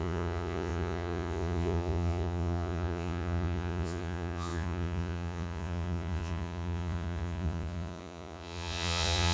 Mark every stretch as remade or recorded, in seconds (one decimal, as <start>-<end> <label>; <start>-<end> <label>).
0.0-9.3 remade